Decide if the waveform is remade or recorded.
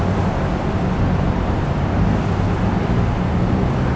remade